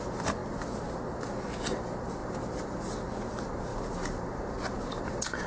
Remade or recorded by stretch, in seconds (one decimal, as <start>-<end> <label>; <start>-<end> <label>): 0.0-2.2 recorded; 2.2-3.3 remade; 3.3-3.7 recorded; 3.7-4.5 remade; 4.5-5.5 recorded

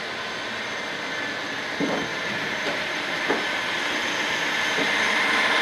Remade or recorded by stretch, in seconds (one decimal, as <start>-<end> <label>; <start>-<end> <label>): 0.0-2.1 recorded; 2.1-3.3 remade; 3.3-5.6 recorded

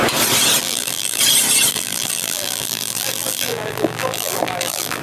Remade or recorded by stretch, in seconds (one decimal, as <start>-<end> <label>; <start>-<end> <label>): 0.0-0.6 recorded; 0.6-1.2 remade; 1.2-1.7 recorded; 1.7-5.0 remade

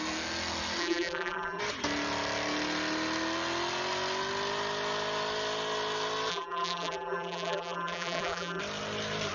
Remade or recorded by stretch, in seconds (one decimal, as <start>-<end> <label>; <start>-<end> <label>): 0.0-0.8 recorded; 0.8-1.6 remade; 1.6-6.3 recorded; 6.3-8.6 remade; 8.6-9.3 recorded

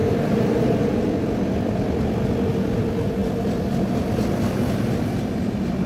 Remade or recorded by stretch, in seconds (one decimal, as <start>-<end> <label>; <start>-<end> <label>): 0.0-1.0 remade; 1.0-5.9 recorded

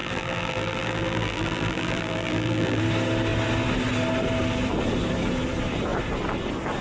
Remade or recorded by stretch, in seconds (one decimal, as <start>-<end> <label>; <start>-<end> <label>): 0.0-2.8 remade; 2.8-6.8 recorded